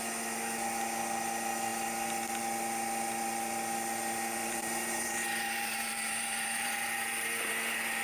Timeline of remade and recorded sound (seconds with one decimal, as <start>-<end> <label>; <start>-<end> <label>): 0.0-4.4 recorded; 4.4-7.5 remade; 7.5-8.0 recorded